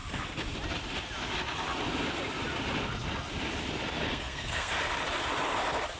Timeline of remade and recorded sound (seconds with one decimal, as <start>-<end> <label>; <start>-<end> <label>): 0.0-4.1 recorded; 4.1-4.7 remade; 4.7-6.0 recorded